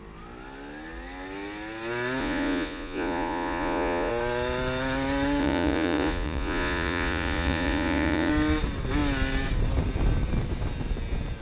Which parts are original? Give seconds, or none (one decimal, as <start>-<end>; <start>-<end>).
0.0-2.2; 4.1-5.4; 8.3-11.4